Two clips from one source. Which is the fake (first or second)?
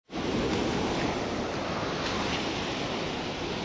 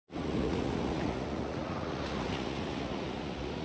second